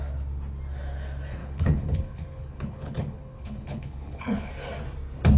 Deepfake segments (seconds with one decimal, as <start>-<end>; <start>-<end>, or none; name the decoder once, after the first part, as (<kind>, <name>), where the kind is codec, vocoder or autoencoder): 1.4-4.5 (codec, HILCodec)

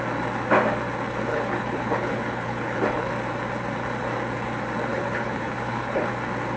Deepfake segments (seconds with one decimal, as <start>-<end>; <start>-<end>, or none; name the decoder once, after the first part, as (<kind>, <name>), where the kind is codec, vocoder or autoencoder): 1.3-3.1 (codec, HILCodec); 4.9-6.1

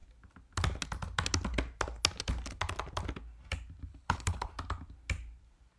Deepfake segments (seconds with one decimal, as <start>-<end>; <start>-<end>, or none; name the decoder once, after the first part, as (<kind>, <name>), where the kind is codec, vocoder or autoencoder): 3.9-4.5 (codec, HILCodec)

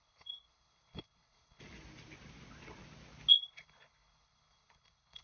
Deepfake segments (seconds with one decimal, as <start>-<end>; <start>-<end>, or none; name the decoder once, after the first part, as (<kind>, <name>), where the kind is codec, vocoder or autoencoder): 0.0-1.6 (codec, HILCodec); 3.3-5.2

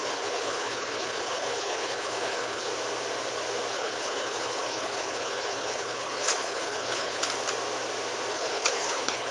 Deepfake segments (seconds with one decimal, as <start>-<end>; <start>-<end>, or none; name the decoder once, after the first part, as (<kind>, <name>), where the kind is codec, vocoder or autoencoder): 0.0-2.7 (codec, HILCodec); 3.7-7.2; 8.3-9.3

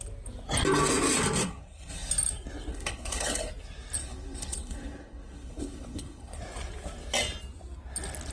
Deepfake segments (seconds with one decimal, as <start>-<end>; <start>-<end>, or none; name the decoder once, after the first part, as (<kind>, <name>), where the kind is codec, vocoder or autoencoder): 1.4-2.1 (codec, HILCodec); 2.7-3.5; 4.0-6.4